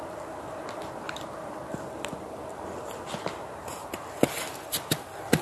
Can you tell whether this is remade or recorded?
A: recorded